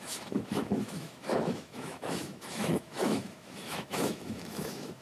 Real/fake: fake